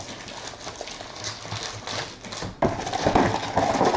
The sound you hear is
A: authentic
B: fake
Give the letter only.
A